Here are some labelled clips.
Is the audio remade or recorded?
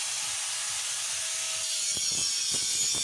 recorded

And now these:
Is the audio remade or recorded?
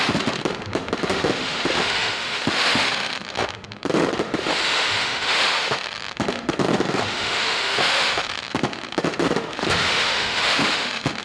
remade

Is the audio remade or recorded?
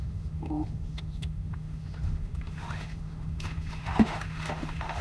remade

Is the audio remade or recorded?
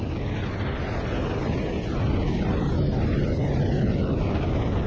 recorded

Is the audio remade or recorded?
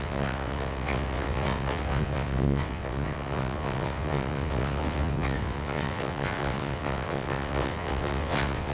remade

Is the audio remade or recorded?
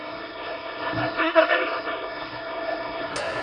remade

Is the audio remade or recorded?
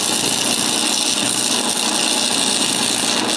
recorded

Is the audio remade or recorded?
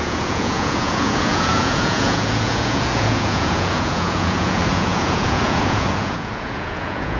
remade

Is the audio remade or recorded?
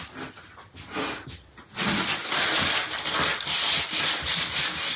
recorded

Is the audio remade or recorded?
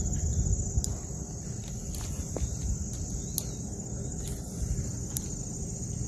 recorded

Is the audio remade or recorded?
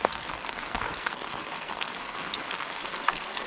remade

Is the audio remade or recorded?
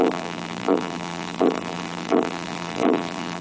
remade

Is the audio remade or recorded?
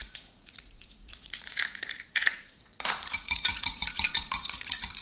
remade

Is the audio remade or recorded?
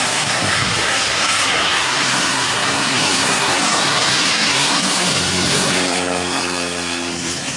remade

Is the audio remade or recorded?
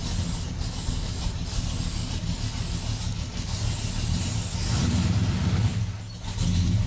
recorded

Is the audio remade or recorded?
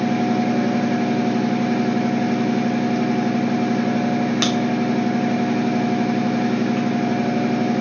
recorded